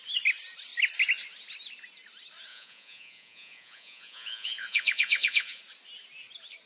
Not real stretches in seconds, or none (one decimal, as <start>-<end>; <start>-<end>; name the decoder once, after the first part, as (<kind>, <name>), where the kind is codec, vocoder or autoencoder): 2.5-5.6 (vocoder, Vocos)